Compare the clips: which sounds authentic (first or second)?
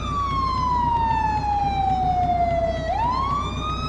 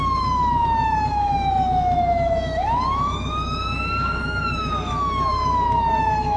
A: first